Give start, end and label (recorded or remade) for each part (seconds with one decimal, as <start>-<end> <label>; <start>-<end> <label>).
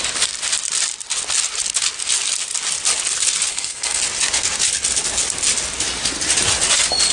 0.0-3.5 recorded; 3.5-4.0 remade; 4.0-7.1 recorded